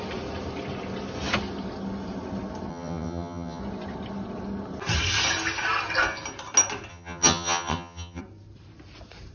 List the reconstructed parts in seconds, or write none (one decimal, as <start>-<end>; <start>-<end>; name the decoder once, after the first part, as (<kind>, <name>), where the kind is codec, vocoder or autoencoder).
2.7-3.6 (vocoder, HiFi-GAN); 6.9-8.2